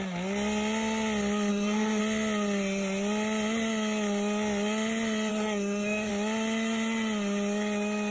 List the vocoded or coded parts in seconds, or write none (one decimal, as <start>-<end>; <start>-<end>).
1.5-2.0; 5.3-6.1